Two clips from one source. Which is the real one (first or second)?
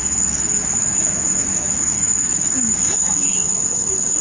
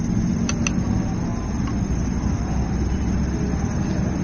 second